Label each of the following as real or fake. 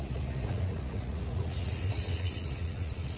fake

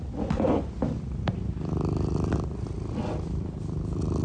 real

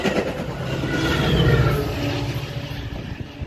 real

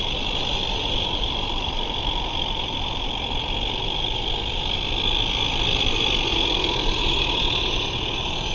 real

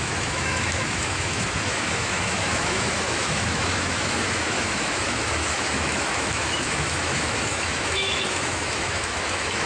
fake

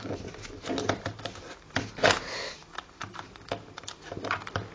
real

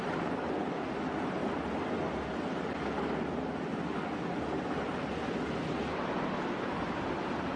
real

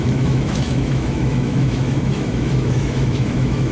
fake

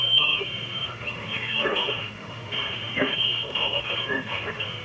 fake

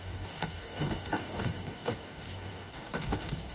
fake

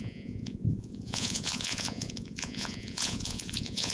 fake